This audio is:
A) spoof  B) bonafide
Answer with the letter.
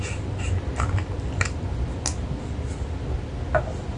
B